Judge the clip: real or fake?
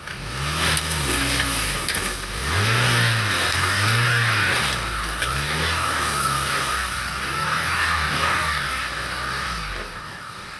fake